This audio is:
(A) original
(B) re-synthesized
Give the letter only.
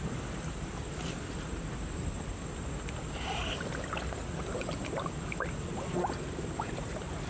A